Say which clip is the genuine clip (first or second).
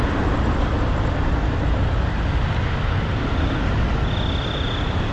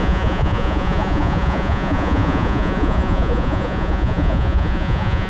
first